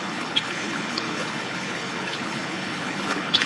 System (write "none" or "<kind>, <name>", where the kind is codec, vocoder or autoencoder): codec, HILCodec